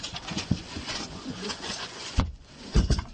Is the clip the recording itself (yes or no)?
no